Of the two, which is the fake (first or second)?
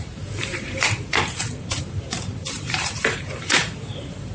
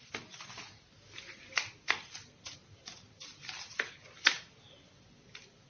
first